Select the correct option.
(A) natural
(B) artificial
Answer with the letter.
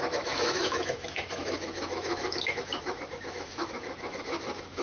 B